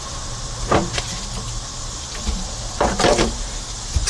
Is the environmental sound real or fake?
real